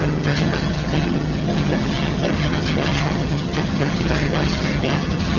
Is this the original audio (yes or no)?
no